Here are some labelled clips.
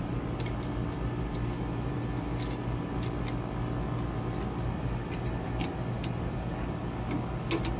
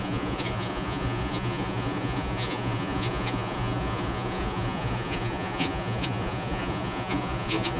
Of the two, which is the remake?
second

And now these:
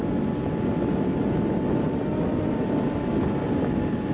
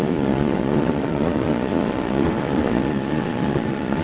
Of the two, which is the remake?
second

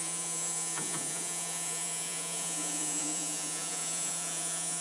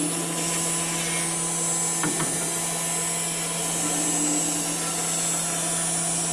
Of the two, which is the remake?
first